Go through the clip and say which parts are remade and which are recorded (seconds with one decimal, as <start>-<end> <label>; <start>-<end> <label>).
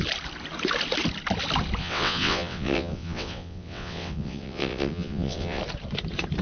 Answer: 0.0-1.8 recorded; 1.8-5.6 remade; 5.6-6.4 recorded